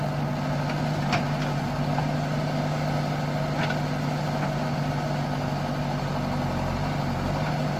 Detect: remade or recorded recorded